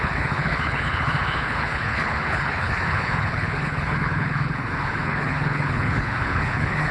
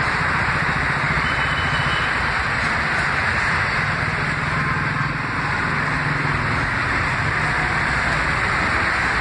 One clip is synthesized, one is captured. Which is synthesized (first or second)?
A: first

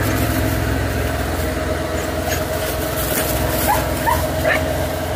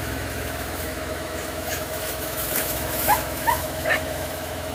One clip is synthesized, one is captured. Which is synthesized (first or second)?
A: second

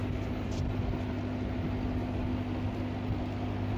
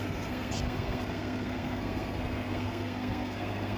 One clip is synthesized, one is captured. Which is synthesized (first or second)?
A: second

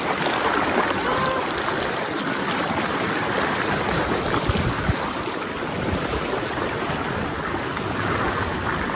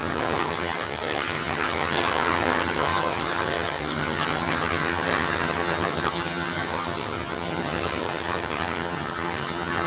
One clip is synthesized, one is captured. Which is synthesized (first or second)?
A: second